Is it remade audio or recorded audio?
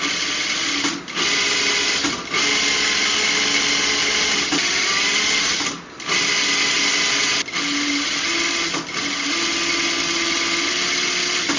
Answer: recorded